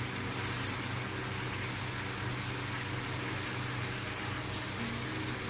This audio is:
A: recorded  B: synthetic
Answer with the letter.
A